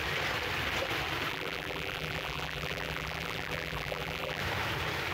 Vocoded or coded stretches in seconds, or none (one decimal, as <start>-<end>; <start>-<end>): 1.3-4.4